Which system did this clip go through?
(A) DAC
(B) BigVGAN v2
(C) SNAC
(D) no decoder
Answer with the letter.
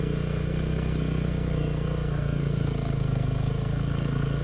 C